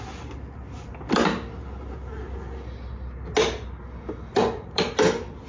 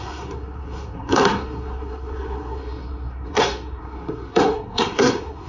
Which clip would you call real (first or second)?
first